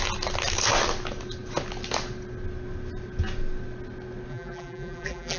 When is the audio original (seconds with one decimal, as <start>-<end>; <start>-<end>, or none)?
0.0-4.3